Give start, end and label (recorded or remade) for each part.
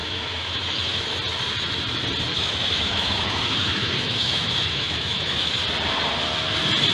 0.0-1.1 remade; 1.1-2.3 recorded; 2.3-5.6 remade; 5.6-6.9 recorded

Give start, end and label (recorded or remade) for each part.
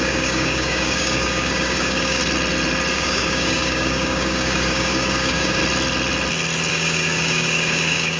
0.0-2.2 remade; 2.2-2.9 recorded; 2.9-5.6 remade; 5.6-6.7 recorded; 6.7-8.2 remade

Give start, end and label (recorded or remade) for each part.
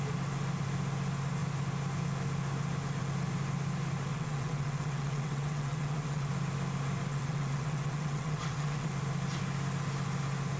0.0-4.1 recorded; 4.1-6.3 remade; 6.3-7.1 recorded; 7.1-8.9 remade; 8.9-10.6 recorded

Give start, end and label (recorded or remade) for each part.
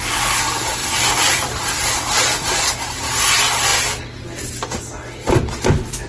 0.0-0.8 recorded; 0.8-3.0 remade; 3.0-6.1 recorded